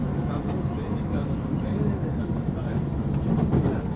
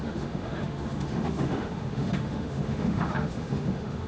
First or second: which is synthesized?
second